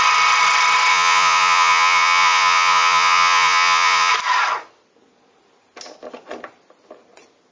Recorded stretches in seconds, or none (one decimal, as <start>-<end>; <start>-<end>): 0.0-0.9; 4.1-7.5

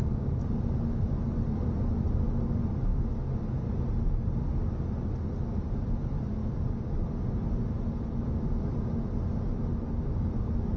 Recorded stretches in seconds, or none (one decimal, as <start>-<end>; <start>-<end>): 0.0-10.8

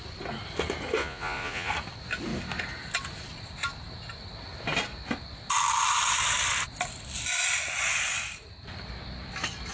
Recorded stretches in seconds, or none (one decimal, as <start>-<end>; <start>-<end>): 0.0-1.0; 1.7-9.7

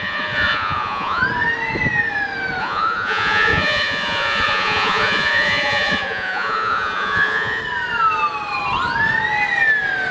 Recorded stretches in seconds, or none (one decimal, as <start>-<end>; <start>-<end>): 1.2-2.6; 7.6-10.1

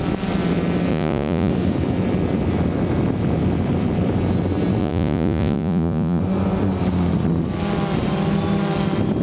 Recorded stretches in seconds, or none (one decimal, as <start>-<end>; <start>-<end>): 0.0-0.9; 1.5-4.8; 6.2-9.2

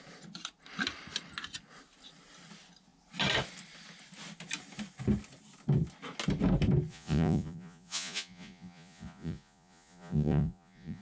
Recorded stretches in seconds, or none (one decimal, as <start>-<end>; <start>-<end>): 0.0-6.9

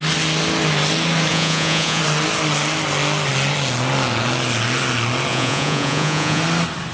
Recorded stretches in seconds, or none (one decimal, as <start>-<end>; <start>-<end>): 0.0-1.3; 2.0-5.3; 6.4-6.9

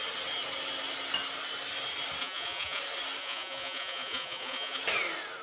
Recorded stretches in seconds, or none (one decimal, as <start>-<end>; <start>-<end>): 0.0-2.2; 2.8-3.2; 4.8-5.4